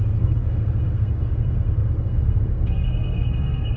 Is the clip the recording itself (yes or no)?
no